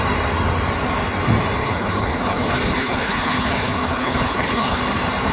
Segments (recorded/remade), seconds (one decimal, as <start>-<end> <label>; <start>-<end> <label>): 0.0-1.6 recorded; 1.6-4.8 remade; 4.8-5.3 recorded